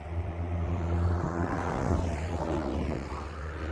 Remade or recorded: remade